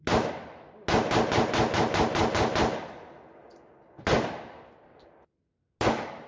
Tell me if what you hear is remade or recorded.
recorded